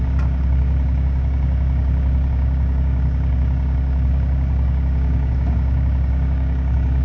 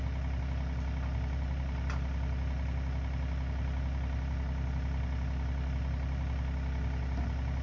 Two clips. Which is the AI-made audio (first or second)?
first